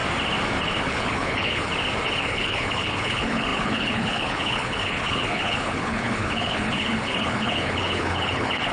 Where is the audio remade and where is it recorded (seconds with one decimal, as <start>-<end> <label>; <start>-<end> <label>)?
0.0-0.8 recorded; 0.8-1.7 remade; 1.7-2.2 recorded; 2.2-8.7 remade